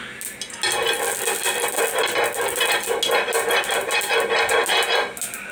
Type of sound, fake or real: real